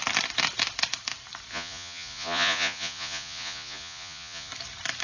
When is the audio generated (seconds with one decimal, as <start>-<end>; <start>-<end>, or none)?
1.5-4.5